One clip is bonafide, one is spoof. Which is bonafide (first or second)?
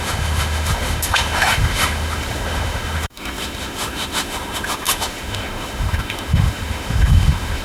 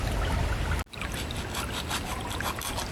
second